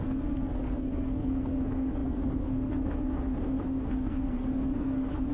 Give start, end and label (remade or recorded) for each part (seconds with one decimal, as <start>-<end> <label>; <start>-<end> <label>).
0.0-5.3 remade